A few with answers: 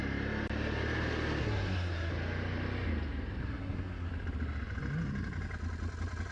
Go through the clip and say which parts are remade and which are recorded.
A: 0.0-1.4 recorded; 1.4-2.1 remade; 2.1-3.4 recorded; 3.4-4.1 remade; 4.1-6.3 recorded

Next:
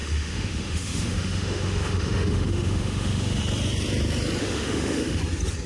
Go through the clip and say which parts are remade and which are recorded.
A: 0.0-3.4 remade; 3.4-4.4 recorded; 4.4-5.2 remade; 5.2-5.7 recorded